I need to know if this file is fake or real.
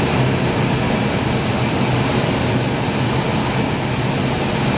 real